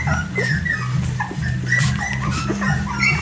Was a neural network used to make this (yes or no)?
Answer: no